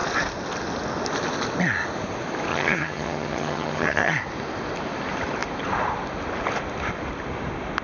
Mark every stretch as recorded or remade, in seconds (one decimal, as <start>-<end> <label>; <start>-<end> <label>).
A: 0.0-2.5 recorded; 2.5-4.1 remade; 4.1-7.8 recorded